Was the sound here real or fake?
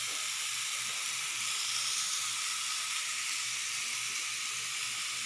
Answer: real